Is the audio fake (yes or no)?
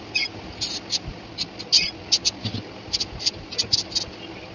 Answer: no